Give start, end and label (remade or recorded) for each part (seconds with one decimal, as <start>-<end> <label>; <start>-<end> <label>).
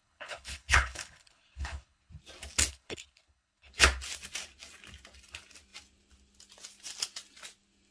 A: 0.0-2.2 remade; 2.2-2.7 recorded; 2.7-3.7 remade; 3.7-7.9 recorded